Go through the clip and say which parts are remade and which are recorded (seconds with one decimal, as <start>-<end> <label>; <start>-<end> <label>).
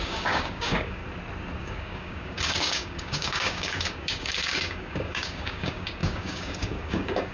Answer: 0.0-1.0 remade; 1.0-1.6 recorded; 1.6-7.3 remade